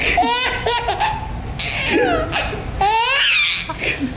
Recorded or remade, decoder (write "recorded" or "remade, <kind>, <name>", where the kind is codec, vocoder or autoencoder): recorded